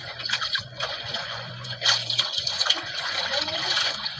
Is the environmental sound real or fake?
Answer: fake